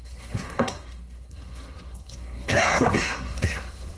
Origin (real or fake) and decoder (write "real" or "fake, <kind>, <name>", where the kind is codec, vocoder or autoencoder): fake, codec, SNAC